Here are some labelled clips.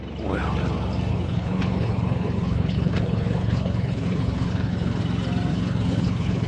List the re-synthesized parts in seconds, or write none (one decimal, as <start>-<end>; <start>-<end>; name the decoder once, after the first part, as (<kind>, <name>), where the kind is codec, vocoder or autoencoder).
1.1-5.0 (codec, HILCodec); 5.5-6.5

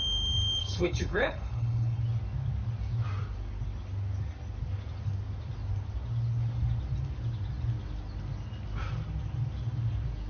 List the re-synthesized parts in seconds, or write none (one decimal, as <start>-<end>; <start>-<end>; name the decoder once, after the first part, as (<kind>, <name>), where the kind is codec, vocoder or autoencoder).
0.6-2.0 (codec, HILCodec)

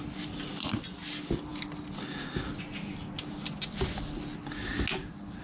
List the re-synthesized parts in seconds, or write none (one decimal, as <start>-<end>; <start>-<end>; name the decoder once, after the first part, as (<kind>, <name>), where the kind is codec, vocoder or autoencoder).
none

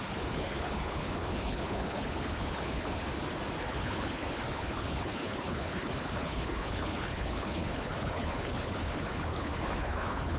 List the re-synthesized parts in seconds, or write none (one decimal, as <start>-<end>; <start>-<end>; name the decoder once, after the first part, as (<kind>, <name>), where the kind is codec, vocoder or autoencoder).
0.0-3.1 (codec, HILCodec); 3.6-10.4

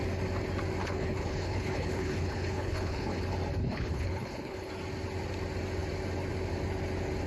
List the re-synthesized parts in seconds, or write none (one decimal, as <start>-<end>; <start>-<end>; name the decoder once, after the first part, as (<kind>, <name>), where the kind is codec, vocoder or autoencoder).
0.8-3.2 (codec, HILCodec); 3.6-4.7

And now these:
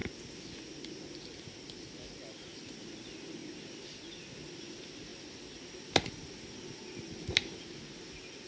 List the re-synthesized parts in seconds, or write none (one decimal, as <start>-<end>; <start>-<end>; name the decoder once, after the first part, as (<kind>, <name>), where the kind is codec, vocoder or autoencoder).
none